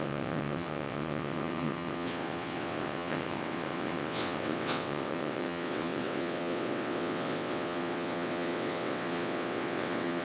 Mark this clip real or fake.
fake